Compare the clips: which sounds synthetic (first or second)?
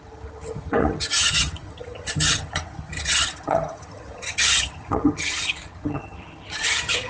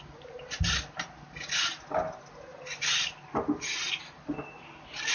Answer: first